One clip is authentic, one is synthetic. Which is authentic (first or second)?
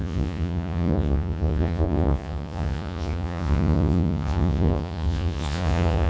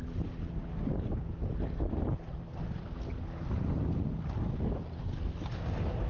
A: second